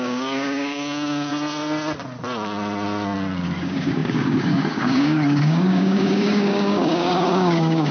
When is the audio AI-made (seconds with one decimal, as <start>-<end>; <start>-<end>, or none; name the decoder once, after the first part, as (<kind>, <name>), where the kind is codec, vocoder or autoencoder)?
0.0-1.3 (codec, DAC); 3.6-7.9